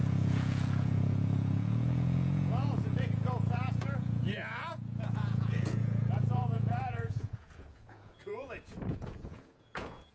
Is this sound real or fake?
fake